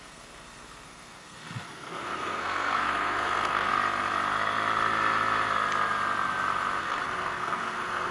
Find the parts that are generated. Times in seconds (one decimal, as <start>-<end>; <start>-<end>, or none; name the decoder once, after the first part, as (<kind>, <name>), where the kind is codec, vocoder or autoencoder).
0.0-3.7 (codec, SNAC); 6.8-8.1